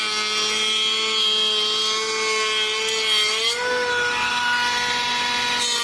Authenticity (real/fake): real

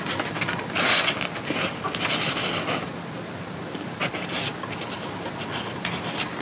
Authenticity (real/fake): real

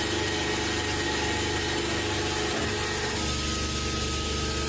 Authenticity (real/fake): real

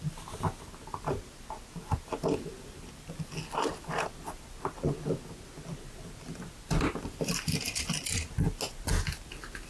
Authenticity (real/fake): real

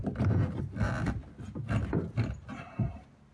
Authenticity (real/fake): real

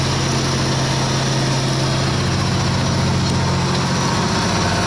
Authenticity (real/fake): real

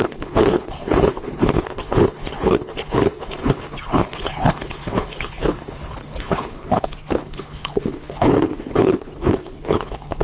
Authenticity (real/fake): fake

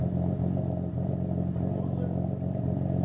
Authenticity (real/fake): real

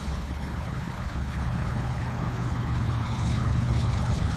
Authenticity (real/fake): fake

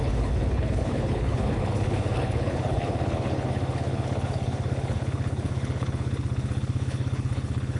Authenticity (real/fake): fake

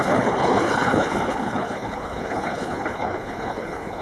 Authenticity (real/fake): fake